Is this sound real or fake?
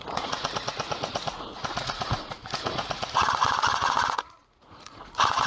fake